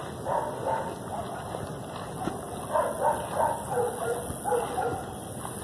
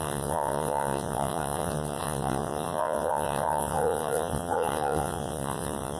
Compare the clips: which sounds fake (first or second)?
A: second